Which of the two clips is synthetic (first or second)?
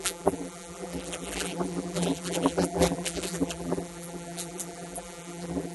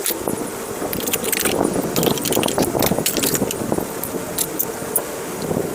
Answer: first